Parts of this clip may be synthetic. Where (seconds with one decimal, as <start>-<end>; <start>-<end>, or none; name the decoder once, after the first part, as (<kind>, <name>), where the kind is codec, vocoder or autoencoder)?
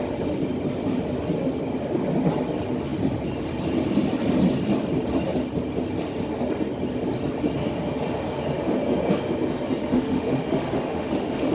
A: 9.8-11.5 (autoencoder, DAC-VAE)